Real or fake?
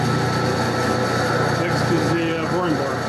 real